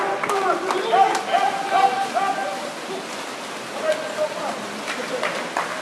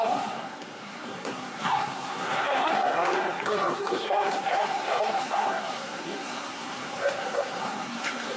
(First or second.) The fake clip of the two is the second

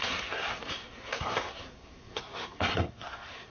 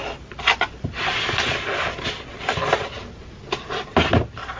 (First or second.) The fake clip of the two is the first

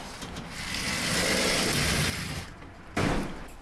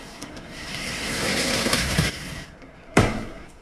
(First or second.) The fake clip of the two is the second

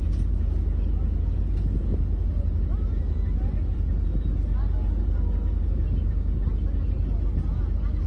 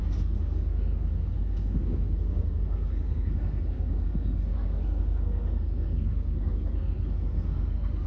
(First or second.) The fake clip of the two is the second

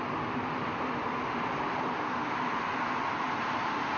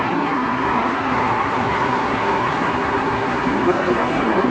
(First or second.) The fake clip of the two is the second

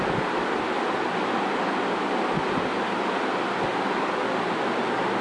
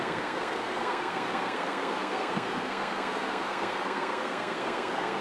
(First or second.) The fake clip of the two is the second